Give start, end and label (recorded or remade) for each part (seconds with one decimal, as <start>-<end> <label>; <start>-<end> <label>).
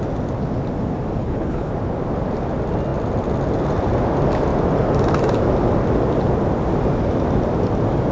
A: 0.0-1.2 recorded; 1.2-1.7 remade; 1.7-8.1 recorded